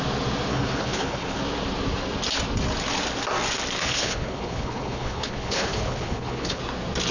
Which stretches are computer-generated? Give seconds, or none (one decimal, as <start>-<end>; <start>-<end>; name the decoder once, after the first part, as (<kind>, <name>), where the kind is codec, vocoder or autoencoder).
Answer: 0.5-1.4 (codec, HILCodec); 3.8-6.6